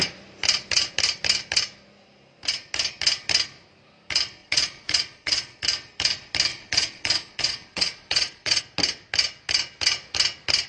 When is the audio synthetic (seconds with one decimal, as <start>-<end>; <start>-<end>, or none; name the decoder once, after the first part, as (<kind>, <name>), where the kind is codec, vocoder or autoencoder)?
4.4-5.6 (vocoder, Vocos); 6.5-8.6